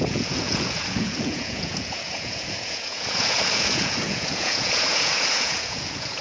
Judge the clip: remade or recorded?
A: remade